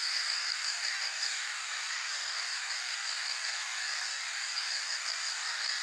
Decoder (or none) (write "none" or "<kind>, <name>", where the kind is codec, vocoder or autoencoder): codec, DAC